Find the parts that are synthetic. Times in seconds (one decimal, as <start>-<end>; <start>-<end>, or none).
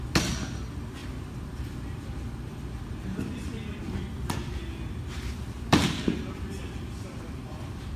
none